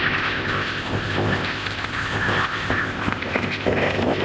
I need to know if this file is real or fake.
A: fake